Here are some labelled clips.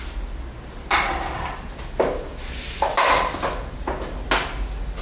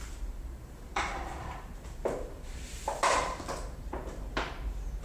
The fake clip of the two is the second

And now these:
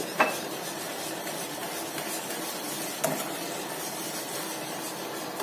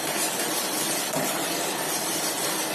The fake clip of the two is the second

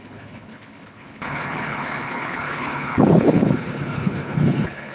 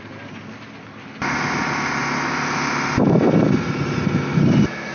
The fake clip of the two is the first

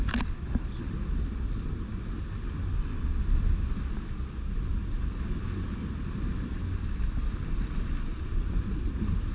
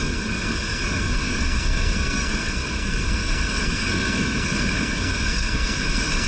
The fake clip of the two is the second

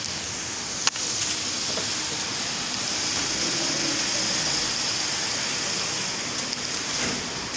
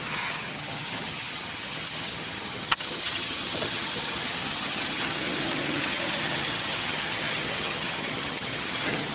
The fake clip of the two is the second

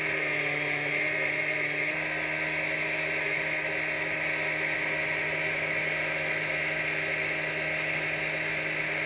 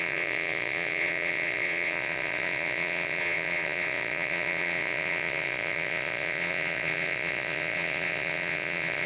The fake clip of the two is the second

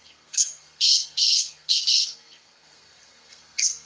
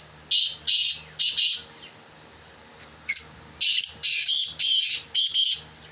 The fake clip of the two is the first